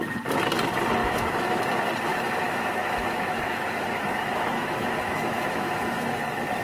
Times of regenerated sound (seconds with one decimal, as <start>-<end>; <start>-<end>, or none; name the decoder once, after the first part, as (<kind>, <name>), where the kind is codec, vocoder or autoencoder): 1.0-1.6 (autoencoder, DAC-VAE); 2.1-6.1